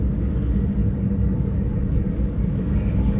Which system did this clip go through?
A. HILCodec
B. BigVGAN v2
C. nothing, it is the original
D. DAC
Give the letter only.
D